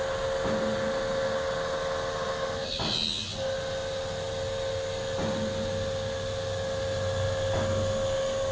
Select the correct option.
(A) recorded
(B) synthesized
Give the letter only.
A